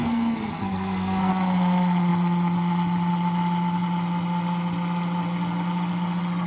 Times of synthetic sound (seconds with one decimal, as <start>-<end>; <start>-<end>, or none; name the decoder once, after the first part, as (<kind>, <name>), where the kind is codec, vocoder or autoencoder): 0.0-1.3 (codec, SNAC)